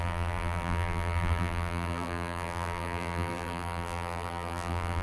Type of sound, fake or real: fake